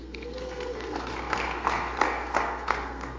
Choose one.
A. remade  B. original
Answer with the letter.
A